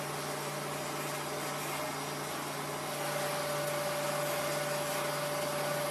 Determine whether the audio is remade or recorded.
recorded